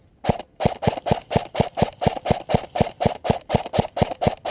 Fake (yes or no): no